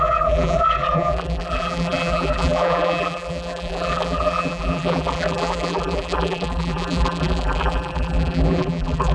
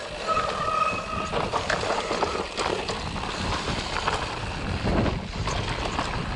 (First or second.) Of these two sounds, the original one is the second